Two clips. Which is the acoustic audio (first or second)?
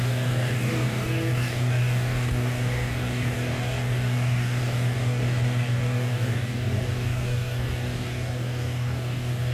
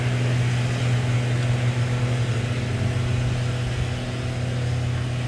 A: second